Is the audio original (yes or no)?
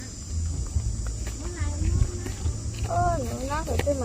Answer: yes